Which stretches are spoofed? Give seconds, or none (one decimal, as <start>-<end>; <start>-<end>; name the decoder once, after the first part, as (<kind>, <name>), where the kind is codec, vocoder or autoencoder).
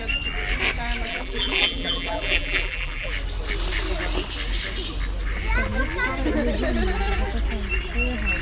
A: 1.1-3.1 (vocoder, BigVGAN v2)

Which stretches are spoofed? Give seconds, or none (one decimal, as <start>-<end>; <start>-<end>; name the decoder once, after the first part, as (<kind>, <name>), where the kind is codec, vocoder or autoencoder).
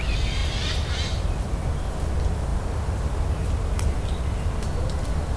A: none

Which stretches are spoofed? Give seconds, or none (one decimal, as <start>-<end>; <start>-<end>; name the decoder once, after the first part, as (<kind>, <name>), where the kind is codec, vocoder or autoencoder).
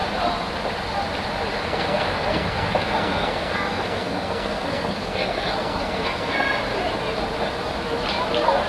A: 1.6-6.6 (codec, SNAC)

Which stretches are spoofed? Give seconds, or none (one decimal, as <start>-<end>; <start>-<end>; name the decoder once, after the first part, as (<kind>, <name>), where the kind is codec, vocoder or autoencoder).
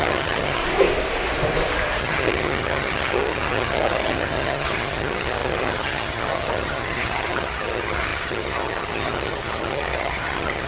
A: 0.0-0.6 (vocoder, HiFi-GAN); 2.0-10.7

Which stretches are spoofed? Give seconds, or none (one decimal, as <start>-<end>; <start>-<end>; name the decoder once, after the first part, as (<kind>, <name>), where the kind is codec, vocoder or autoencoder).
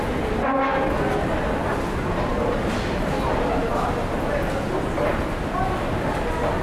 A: none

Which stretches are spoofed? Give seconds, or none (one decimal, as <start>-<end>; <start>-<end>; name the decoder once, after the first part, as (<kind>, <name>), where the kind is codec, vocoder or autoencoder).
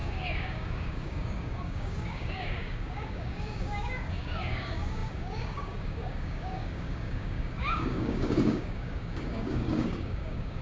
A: 0.0-10.6 (codec, DAC)